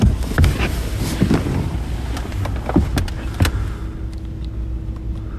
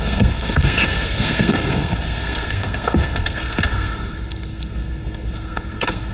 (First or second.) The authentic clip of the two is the first